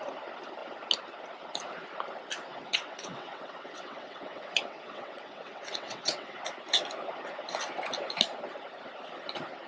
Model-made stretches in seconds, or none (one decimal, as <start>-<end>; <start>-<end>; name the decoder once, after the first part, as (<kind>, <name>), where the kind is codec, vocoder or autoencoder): 2.5-6.4 (vocoder, WaveNeXt)